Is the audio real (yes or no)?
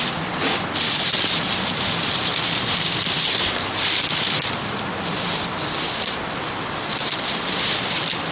no